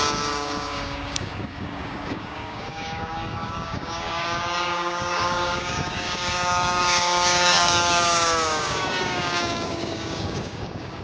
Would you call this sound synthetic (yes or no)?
yes